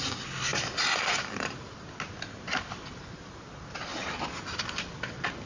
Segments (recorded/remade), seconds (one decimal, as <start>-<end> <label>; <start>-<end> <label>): 0.0-5.5 recorded